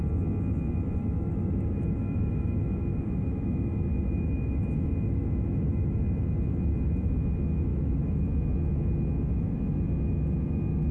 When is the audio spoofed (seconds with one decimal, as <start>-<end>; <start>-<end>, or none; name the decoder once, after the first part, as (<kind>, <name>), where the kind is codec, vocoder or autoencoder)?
1.0-6.0 (autoencoder, DAC-VAE); 7.7-8.3